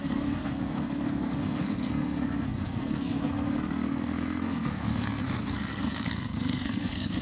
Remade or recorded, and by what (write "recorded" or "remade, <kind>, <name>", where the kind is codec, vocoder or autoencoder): remade, codec, SNAC